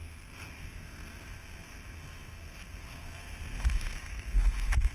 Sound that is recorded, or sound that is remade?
remade